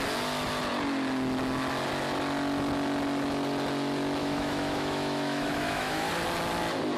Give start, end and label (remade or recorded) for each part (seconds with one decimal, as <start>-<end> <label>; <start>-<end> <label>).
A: 0.0-4.2 recorded; 4.2-6.1 remade; 6.1-7.0 recorded

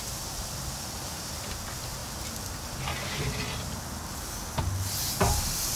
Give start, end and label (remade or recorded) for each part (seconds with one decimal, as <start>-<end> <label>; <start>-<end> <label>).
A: 0.0-5.8 recorded

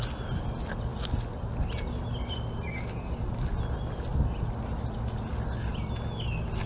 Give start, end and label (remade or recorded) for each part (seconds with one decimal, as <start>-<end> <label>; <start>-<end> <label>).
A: 0.0-6.7 recorded

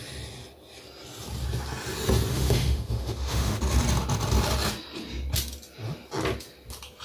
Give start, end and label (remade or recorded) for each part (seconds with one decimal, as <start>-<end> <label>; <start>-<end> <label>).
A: 0.0-2.3 recorded; 2.3-3.6 remade; 3.6-7.0 recorded

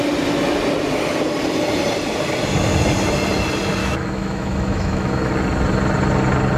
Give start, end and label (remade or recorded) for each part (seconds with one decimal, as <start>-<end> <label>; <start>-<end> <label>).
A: 0.0-3.8 recorded; 3.8-5.3 remade; 5.3-6.6 recorded

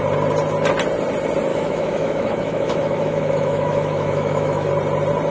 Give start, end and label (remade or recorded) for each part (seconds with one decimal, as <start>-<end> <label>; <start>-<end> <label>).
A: 0.0-1.5 recorded; 1.5-4.7 remade; 4.7-5.3 recorded

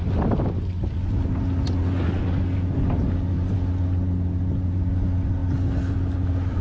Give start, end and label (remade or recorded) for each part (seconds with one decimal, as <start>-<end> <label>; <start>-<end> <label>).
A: 0.0-6.6 recorded

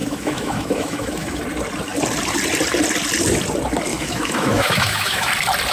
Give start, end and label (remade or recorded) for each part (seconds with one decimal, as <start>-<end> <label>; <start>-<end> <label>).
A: 0.0-1.4 remade; 1.4-3.9 recorded; 3.9-5.3 remade; 5.3-5.7 recorded